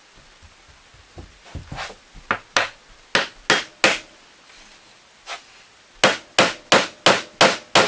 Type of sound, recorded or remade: recorded